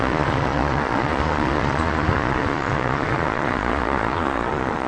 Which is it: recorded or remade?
remade